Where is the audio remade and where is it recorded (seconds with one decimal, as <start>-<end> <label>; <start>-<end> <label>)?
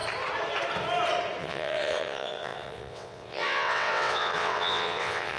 0.0-1.4 recorded; 1.4-5.4 remade